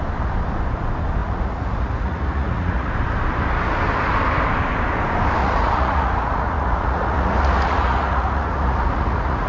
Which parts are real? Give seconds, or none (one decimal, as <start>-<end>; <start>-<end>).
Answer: 0.0-1.2; 2.9-5.4